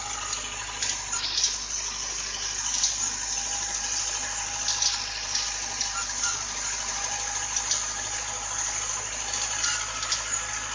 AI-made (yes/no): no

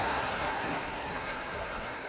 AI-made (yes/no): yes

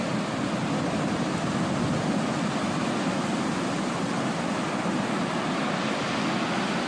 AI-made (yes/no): no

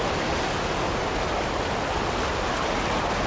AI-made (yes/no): no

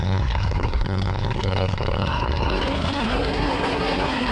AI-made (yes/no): yes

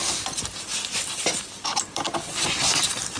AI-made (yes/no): no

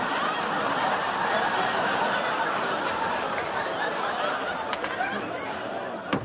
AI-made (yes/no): no